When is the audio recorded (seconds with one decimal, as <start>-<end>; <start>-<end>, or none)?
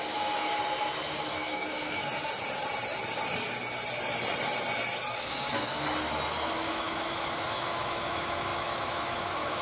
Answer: 0.5-1.3; 2.0-6.5